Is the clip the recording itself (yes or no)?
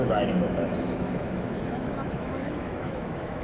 no